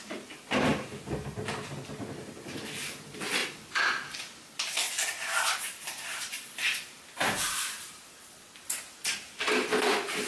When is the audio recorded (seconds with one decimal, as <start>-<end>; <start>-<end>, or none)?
0.0-0.7; 1.7-10.3